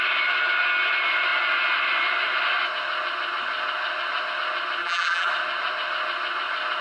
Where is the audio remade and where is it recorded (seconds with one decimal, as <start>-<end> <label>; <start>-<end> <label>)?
0.0-4.8 recorded; 4.8-5.3 remade; 5.3-6.8 recorded